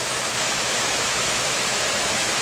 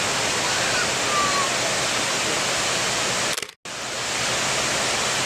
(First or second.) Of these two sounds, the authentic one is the second